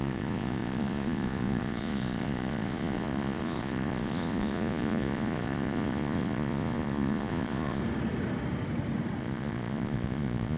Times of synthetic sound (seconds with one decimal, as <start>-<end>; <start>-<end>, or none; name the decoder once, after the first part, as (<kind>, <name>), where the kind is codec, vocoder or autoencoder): 0.0-7.8 (vocoder, Vocos); 9.2-10.6